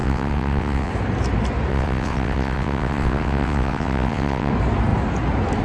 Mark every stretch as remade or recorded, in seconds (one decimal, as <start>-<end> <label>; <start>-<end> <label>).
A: 0.0-0.9 remade; 0.9-1.7 recorded; 1.7-4.5 remade; 4.5-5.6 recorded